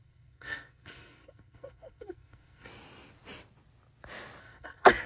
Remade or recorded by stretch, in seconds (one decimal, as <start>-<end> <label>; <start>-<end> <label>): 0.0-2.7 remade; 2.7-4.4 recorded; 4.4-5.1 remade